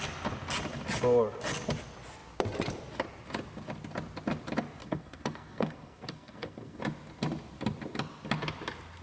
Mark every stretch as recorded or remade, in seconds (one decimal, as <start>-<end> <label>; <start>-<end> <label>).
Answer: 0.0-4.8 recorded; 4.8-6.8 remade; 6.8-9.0 recorded